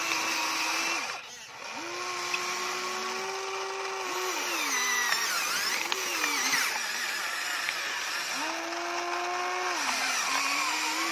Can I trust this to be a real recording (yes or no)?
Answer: yes